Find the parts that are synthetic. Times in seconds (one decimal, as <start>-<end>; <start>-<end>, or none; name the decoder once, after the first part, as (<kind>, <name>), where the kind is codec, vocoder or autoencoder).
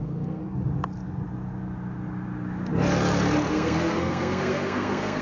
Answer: 0.0-0.4 (codec, SNAC); 3.5-5.2